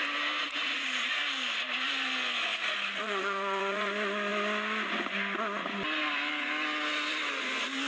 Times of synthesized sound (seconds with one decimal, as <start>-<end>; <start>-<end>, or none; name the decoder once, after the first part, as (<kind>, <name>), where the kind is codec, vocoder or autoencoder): 0.4-1.2 (vocoder, Vocos); 2.5-3.9